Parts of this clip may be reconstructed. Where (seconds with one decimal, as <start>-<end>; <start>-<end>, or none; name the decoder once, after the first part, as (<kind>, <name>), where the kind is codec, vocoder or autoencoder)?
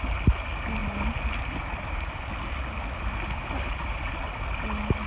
none